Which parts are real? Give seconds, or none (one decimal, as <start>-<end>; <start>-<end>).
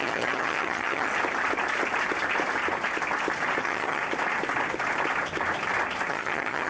1.1-3.6; 4.0-6.1